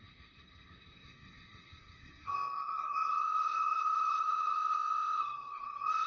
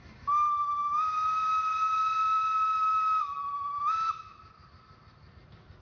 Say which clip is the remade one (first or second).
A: first